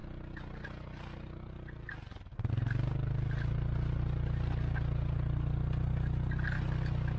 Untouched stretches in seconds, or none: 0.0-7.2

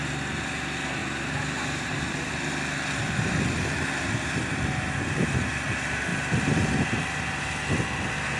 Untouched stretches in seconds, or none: 0.0-1.0; 2.5-8.4

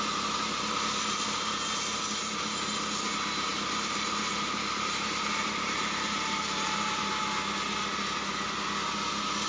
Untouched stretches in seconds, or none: 0.0-3.5; 7.0-9.5

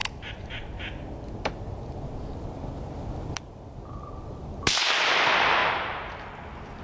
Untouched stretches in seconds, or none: 0.0-6.8

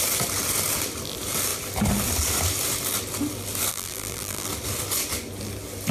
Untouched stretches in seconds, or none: 0.0-3.7; 4.5-5.9

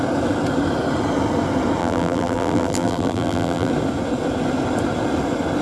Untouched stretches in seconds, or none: 0.0-1.8; 3.7-5.6